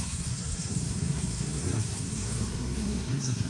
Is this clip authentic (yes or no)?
no